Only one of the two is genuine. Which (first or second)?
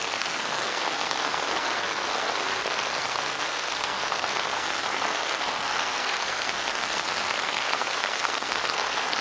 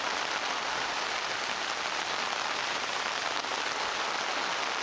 second